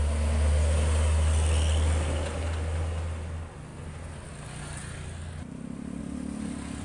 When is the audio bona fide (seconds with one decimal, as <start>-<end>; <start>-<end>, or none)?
0.0-6.8